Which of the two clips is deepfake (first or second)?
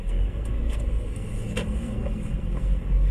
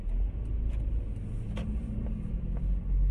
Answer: first